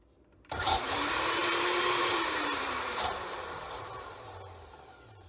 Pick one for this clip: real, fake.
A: fake